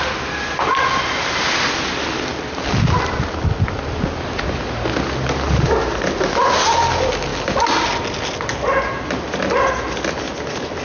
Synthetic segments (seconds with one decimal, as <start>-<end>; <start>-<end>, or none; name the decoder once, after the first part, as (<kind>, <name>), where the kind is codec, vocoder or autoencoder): none